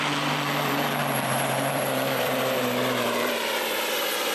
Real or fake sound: fake